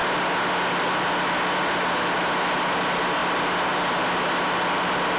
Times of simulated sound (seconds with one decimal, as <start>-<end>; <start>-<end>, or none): none